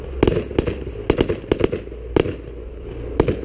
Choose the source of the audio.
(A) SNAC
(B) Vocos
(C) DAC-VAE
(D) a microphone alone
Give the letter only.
D